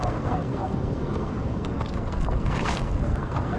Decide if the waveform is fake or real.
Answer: fake